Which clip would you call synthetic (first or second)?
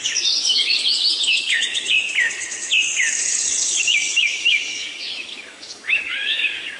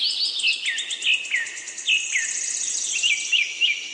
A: first